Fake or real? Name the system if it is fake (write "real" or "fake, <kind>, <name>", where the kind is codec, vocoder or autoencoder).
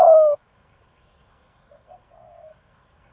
fake, codec, SNAC